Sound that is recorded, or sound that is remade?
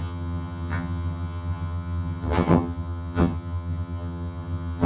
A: remade